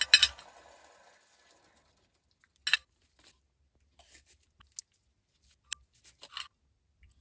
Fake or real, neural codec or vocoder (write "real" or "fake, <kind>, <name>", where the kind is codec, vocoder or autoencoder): real